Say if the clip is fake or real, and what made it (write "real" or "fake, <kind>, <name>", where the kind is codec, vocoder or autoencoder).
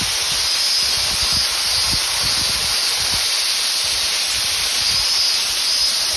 real